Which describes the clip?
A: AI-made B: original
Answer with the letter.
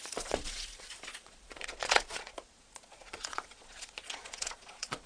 A